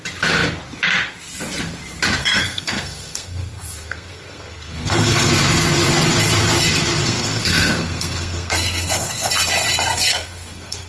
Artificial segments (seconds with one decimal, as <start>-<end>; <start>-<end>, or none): 2.2-5.3; 7.0-9.3; 9.9-10.9